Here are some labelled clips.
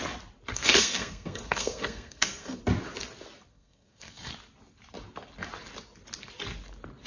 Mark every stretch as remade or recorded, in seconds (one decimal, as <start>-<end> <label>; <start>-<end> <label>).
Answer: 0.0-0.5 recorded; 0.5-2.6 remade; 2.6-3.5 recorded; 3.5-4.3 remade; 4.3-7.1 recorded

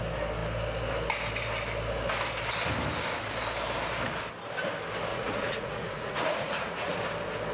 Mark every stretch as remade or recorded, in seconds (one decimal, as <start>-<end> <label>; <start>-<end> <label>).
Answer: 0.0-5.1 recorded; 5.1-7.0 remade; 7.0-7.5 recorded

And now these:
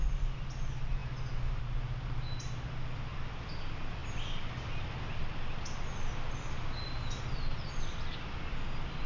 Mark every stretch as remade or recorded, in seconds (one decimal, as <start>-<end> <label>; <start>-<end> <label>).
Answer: 0.0-9.1 recorded

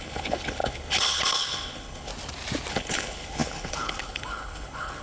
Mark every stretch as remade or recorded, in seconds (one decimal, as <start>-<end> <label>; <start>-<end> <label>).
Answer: 0.0-2.1 remade; 2.1-2.7 recorded; 2.7-5.0 remade

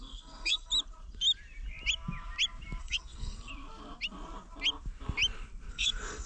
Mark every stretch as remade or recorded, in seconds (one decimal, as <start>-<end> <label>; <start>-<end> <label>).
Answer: 0.0-0.7 remade; 0.7-2.8 recorded; 2.8-3.5 remade; 3.5-5.7 recorded; 5.7-6.3 remade